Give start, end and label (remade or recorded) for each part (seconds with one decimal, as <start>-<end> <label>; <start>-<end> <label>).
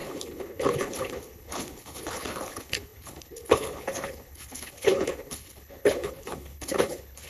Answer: 0.0-7.3 remade